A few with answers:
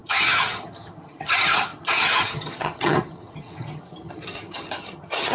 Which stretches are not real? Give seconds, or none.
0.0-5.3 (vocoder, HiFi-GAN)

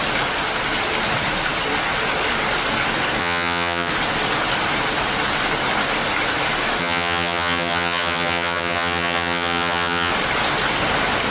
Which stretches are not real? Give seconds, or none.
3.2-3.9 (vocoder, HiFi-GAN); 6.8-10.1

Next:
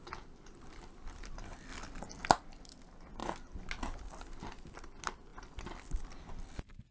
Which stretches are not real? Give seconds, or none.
none

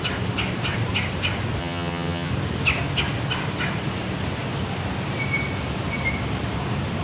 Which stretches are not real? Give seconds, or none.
1.6-2.3 (vocoder, HiFi-GAN)

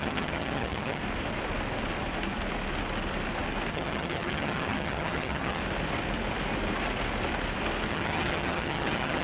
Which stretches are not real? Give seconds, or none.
0.0-1.0 (vocoder, HiFi-GAN); 3.7-5.6; 7.9-9.2

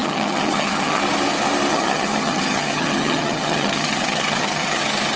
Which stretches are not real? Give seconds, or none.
0.0-1.0 (vocoder, HiFi-GAN); 1.7-4.8

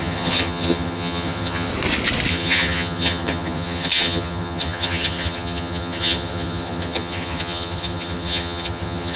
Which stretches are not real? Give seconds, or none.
0.0-1.7 (vocoder, HiFi-GAN); 2.3-9.2

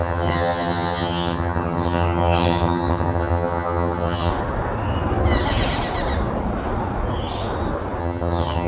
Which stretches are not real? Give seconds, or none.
0.0-4.3 (vocoder, HiFi-GAN); 8.0-8.7